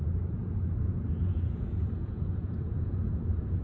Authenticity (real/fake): fake